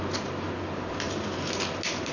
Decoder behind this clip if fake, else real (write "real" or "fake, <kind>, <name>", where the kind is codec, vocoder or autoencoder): real